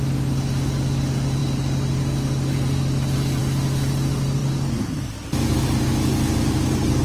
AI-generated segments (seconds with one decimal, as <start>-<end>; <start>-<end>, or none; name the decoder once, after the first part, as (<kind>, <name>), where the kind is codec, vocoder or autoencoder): none